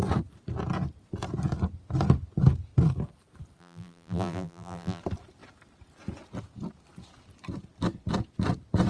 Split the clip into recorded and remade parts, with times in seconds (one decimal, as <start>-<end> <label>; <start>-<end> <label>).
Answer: 0.0-3.6 recorded; 3.6-5.0 remade; 5.0-8.9 recorded

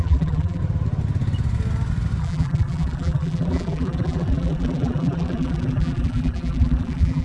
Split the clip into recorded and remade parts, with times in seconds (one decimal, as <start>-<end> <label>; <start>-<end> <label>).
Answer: 0.0-0.6 remade; 0.6-2.2 recorded; 2.2-7.2 remade

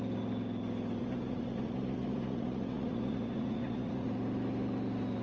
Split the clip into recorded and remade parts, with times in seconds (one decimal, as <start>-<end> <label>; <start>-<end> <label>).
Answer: 0.0-1.0 recorded; 1.0-4.1 remade; 4.1-5.2 recorded